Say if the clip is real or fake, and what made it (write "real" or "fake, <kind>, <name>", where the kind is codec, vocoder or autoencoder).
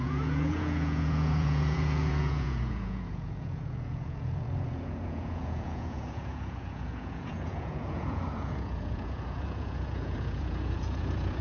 fake, vocoder, Vocos